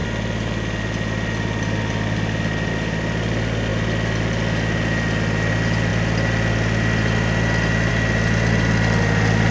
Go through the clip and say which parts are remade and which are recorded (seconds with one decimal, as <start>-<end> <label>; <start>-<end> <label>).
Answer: 0.0-9.5 recorded

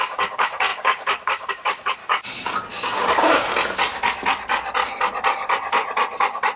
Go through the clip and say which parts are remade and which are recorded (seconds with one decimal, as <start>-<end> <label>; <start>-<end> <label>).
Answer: 0.0-2.0 remade; 2.0-2.7 recorded; 2.7-3.5 remade; 3.5-6.6 recorded